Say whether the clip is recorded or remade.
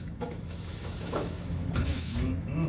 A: remade